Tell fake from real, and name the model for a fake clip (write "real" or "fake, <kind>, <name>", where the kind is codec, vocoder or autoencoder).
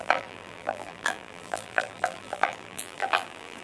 fake, vocoder, BigVGAN v2